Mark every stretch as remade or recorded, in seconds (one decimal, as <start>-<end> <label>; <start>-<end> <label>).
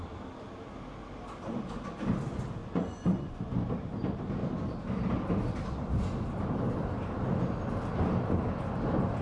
0.0-2.6 recorded; 2.6-3.4 remade; 3.4-9.2 recorded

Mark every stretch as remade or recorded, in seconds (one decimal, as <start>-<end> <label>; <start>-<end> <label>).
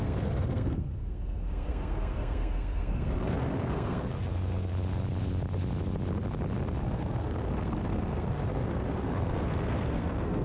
0.0-4.7 remade; 4.7-6.8 recorded; 6.8-10.4 remade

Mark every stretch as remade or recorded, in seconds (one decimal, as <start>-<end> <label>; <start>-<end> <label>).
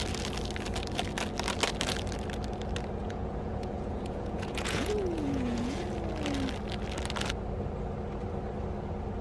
0.0-3.0 recorded; 3.0-5.8 remade; 5.8-9.2 recorded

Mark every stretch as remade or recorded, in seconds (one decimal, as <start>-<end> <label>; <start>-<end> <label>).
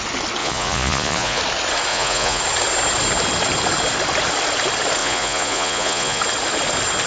0.0-0.4 recorded; 0.4-1.4 remade; 1.4-1.9 recorded; 1.9-2.4 remade; 2.4-5.0 recorded; 5.0-6.2 remade; 6.2-7.1 recorded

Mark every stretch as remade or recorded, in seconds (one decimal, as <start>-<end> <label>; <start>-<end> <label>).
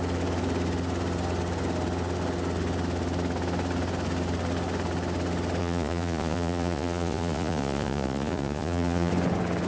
0.0-5.6 recorded; 5.6-9.1 remade; 9.1-9.7 recorded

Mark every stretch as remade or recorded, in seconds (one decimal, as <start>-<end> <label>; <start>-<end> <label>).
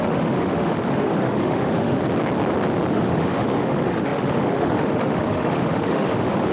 0.0-2.0 remade; 2.0-2.9 recorded; 2.9-6.5 remade